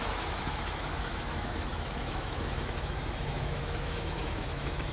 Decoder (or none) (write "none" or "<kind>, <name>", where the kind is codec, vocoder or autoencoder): autoencoder, DAC-VAE